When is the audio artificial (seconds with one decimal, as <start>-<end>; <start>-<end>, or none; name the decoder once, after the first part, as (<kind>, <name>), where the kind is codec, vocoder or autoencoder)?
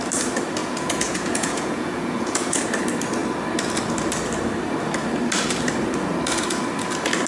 0.6-2.6 (vocoder, Vocos)